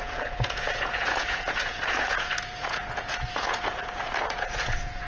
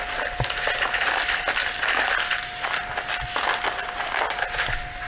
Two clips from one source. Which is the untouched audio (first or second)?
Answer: second